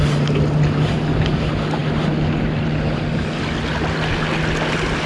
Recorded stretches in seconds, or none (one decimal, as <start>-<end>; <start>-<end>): 0.0-5.1